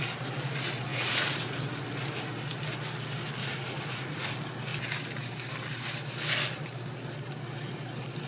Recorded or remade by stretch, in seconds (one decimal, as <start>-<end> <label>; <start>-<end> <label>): 0.0-0.9 recorded; 0.9-1.6 remade; 1.6-3.4 recorded; 3.4-4.3 remade; 4.3-8.3 recorded